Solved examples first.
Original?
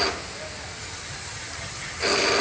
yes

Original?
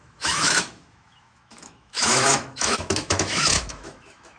no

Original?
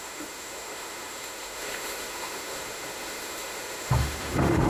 no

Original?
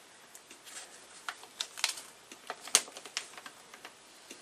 yes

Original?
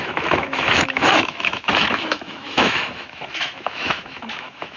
no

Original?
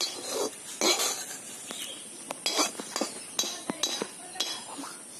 yes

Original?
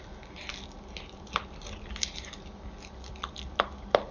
yes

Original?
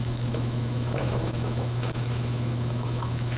no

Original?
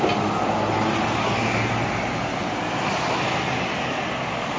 yes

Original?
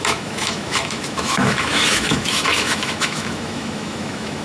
no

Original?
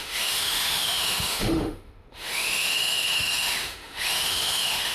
no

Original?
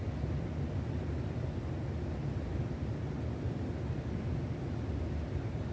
yes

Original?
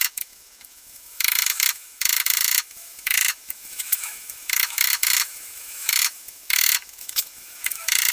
no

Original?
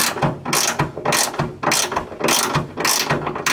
yes